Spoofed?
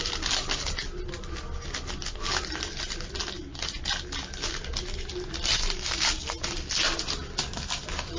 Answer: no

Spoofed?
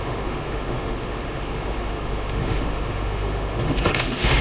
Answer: yes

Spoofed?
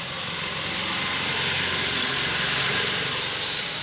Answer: no